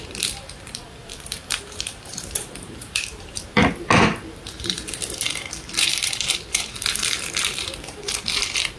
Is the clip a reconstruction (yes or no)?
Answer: yes